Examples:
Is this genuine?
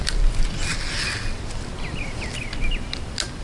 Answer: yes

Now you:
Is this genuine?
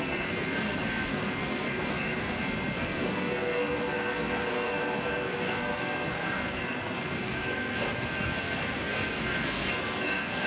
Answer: no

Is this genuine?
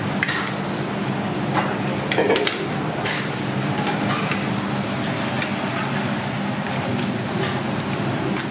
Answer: yes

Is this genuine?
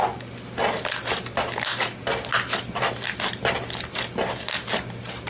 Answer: yes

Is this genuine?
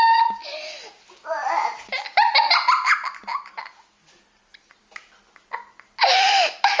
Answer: yes